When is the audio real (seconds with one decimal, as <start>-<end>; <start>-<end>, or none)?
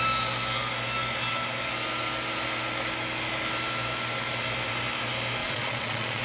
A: 0.0-5.4